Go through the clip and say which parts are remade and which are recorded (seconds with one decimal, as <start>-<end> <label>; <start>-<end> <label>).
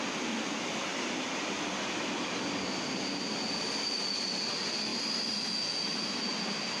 0.0-6.8 recorded